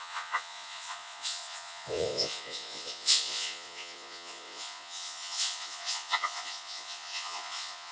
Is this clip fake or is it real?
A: fake